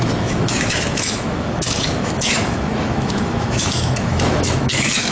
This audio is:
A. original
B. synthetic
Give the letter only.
B